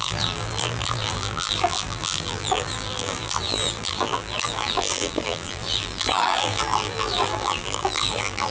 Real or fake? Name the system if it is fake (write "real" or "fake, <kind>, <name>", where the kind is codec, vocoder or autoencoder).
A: fake, vocoder, BigVGAN v2